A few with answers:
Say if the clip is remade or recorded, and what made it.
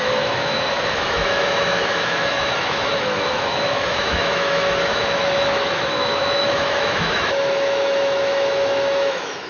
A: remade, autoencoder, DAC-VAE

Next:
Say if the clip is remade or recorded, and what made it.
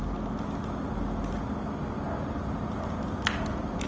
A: recorded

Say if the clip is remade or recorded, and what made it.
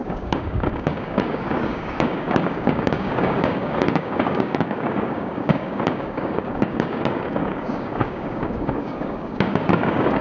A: remade, codec, DAC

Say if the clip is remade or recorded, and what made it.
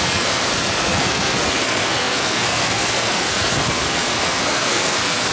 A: remade, codec, SNAC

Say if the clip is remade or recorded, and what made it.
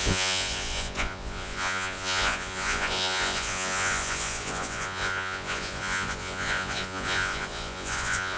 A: remade, vocoder, Vocos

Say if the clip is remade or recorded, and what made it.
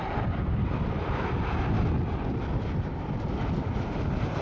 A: recorded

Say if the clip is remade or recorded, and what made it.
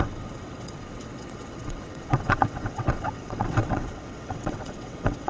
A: remade, vocoder, WaveNeXt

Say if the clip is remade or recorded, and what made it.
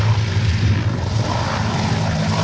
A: remade, vocoder, BigVGAN v2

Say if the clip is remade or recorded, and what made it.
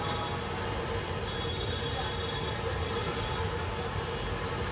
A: recorded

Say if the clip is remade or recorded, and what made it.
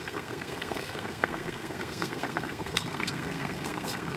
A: remade, codec, SNAC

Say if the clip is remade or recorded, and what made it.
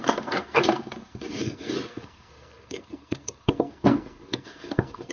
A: remade, codec, SNAC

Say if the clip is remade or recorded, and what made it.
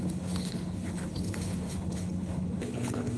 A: remade, codec, HILCodec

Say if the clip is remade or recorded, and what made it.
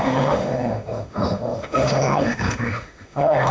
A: remade, autoencoder, DAC-VAE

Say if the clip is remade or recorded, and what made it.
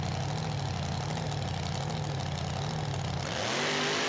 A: recorded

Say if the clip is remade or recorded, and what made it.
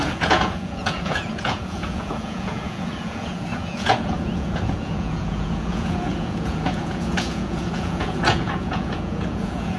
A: remade, vocoder, Vocos